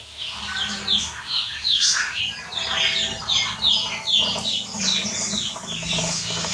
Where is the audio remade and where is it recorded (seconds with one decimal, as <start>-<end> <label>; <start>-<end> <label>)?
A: 0.0-0.4 remade; 0.4-1.0 recorded; 1.0-2.2 remade; 2.2-6.0 recorded; 6.0-6.5 remade